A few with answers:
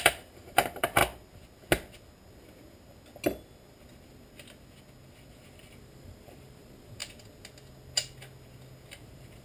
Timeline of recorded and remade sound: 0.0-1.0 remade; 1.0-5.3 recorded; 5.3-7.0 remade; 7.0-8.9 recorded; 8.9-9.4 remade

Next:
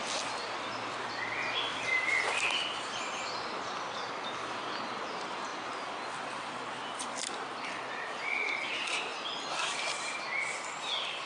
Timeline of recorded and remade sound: 0.0-1.7 recorded; 1.7-3.2 remade; 3.2-11.3 recorded

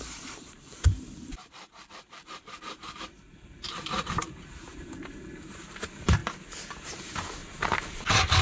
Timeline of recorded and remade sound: 0.0-6.2 remade; 6.2-6.8 recorded; 6.8-7.4 remade; 7.4-8.4 recorded

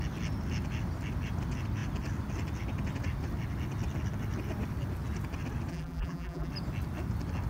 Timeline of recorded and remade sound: 0.0-5.7 recorded; 5.7-6.5 remade; 6.5-7.5 recorded